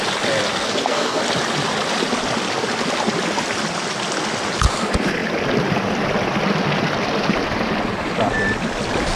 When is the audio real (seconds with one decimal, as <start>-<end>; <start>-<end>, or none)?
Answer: 0.0-0.5; 1.2-9.2